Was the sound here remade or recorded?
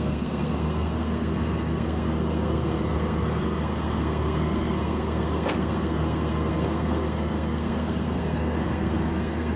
remade